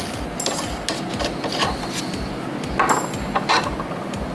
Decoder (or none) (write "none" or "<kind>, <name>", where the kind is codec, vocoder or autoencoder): none